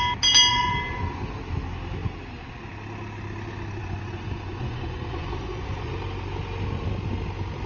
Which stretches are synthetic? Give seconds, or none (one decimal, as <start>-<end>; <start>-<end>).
0.5-1.4; 3.8-5.9